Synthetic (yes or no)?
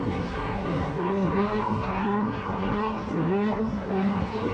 yes